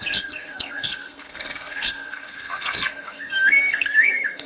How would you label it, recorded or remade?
remade